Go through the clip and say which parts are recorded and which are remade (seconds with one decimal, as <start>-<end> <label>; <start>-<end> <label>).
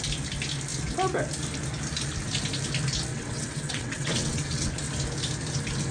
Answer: 0.0-3.1 recorded; 3.1-4.7 remade; 4.7-5.9 recorded